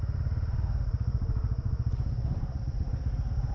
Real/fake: real